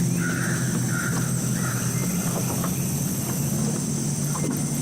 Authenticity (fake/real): real